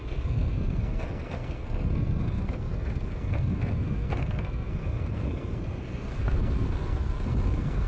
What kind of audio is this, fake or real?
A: fake